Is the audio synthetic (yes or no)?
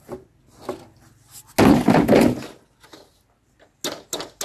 no